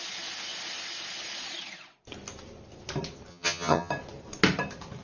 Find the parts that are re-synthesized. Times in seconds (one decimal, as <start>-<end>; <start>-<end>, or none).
3.3-3.9